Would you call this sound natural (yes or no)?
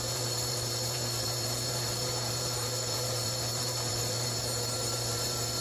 no